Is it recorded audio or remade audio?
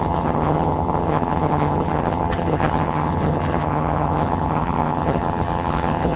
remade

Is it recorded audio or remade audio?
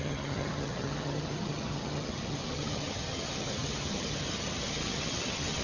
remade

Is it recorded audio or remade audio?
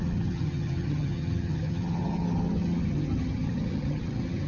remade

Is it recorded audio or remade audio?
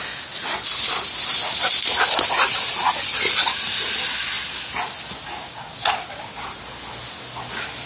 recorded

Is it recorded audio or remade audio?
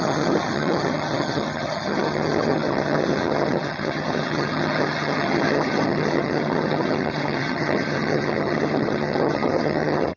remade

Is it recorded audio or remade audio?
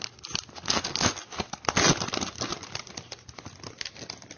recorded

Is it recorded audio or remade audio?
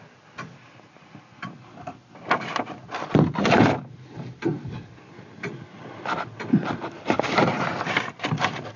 recorded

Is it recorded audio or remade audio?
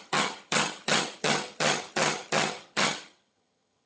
remade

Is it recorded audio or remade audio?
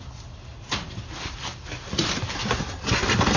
recorded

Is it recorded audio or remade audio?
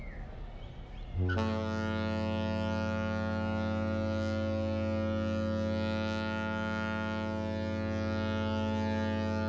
recorded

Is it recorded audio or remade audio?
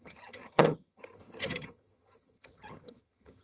remade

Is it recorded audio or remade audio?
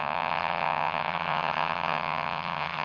remade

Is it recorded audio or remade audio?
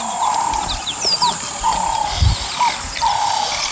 recorded